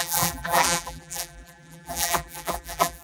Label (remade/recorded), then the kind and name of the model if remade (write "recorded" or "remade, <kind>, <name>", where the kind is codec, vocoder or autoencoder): remade, vocoder, BigVGAN v2